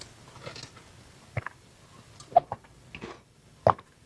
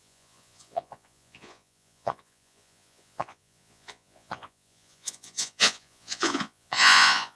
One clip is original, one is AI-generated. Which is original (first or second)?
first